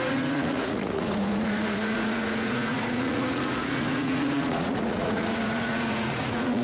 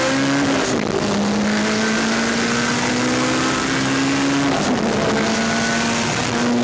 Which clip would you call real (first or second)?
second